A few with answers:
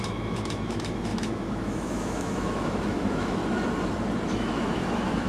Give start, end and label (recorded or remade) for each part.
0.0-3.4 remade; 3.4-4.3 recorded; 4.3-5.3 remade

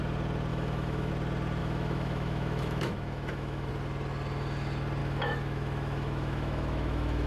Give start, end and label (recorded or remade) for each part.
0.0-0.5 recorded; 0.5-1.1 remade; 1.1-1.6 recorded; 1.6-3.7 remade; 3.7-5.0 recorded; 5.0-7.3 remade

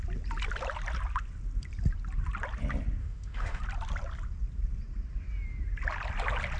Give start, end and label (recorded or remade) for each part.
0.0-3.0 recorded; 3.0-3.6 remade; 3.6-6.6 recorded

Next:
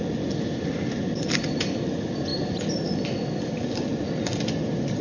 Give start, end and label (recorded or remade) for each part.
0.0-5.0 recorded

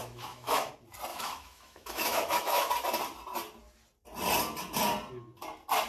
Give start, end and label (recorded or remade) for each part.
0.0-0.7 remade; 0.7-1.1 recorded; 1.1-2.7 remade; 2.7-5.9 recorded

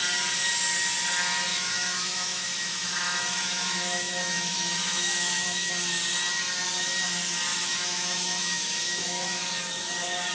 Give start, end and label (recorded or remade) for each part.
0.0-1.5 recorded; 1.5-5.7 remade; 5.7-7.5 recorded; 7.5-9.4 remade; 9.4-10.3 recorded